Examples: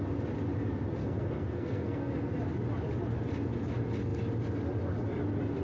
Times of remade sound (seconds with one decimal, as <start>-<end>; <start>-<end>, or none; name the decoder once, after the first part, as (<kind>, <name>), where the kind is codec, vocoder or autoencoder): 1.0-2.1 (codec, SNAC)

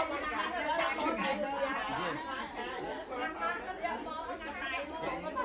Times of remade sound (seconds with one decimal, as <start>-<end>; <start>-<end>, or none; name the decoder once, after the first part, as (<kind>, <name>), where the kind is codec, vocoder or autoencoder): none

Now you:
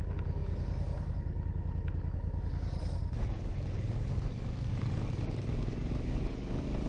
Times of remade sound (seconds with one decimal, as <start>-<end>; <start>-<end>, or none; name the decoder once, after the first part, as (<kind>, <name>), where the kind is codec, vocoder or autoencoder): 0.0-6.9 (codec, DAC)

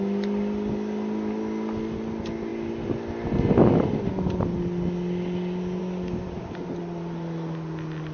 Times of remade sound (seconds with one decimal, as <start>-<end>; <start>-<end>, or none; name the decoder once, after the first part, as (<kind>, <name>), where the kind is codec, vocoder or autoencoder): none